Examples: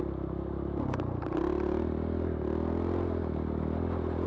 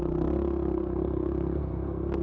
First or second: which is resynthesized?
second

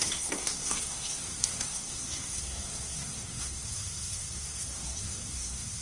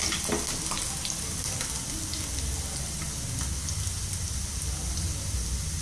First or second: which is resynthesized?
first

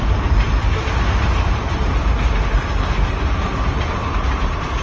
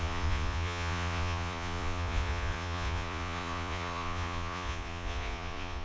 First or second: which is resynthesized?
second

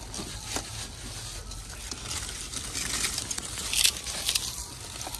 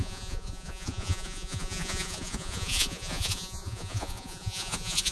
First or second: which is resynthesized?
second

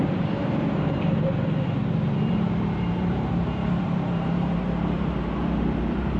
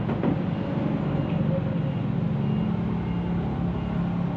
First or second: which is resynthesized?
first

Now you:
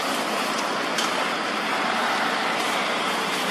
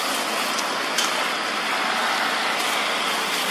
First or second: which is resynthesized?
first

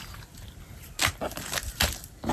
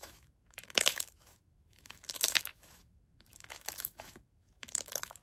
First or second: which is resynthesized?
second